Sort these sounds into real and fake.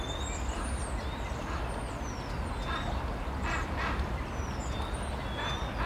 real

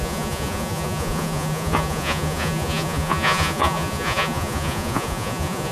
fake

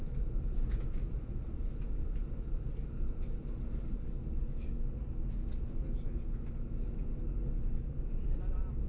real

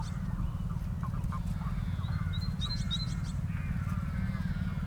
real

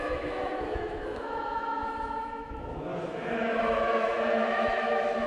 fake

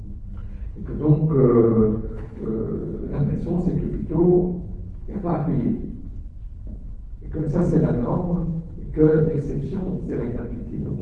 fake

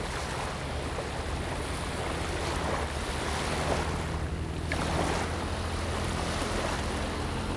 real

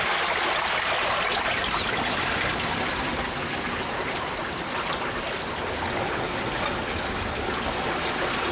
real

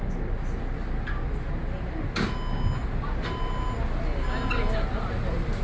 real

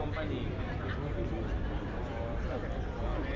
real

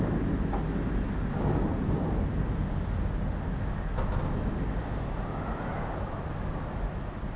real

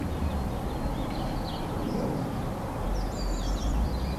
fake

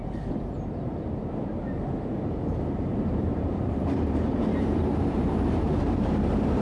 fake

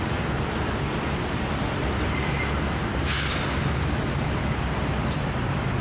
real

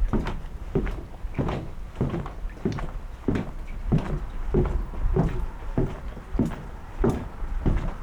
real